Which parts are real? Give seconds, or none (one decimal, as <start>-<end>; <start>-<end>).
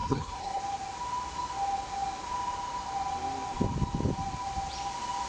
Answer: 0.6-5.3